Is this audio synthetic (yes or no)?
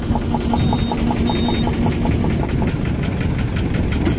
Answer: no